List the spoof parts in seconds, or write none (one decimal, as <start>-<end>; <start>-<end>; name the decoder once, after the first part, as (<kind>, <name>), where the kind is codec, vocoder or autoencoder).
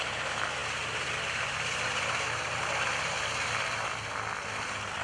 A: none